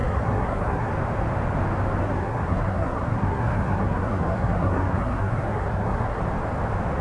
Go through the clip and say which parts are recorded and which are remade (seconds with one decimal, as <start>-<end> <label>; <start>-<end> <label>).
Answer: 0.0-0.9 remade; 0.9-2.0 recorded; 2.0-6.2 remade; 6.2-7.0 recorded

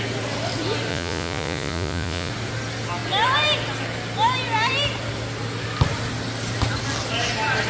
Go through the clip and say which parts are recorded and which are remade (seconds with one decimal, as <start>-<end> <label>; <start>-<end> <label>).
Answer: 0.0-0.9 recorded; 0.9-2.3 remade; 2.3-7.7 recorded

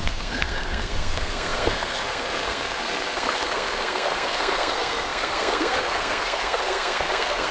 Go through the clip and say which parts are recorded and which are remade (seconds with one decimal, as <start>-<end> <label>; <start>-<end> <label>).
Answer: 0.0-7.5 remade